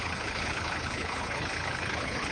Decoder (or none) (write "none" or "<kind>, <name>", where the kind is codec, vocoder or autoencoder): codec, HILCodec